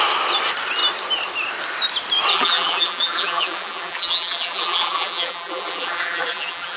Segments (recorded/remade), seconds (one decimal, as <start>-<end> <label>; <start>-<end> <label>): 0.0-2.3 recorded; 2.3-6.8 remade